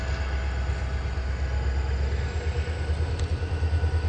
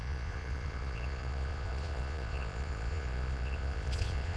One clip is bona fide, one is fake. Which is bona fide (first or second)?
first